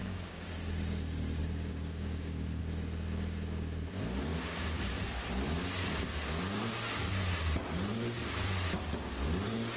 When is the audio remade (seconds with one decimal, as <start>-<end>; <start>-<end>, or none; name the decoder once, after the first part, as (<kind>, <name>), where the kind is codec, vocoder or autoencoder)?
0.0-0.5 (codec, DAC); 1.4-2.6